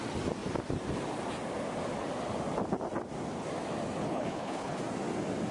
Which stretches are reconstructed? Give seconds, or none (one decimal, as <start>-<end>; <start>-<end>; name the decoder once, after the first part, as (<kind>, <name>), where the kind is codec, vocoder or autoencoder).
4.0-4.8 (codec, HILCodec)